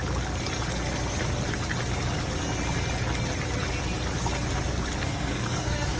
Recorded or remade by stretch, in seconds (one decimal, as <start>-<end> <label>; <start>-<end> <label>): 0.0-5.0 recorded; 5.0-6.0 remade